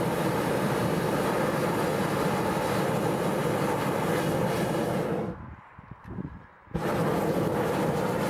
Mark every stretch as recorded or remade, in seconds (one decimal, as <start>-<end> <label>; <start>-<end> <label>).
0.0-8.3 recorded